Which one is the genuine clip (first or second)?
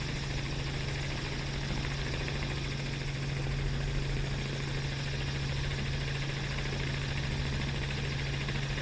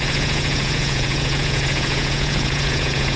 first